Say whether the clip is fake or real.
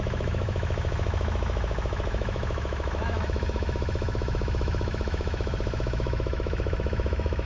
fake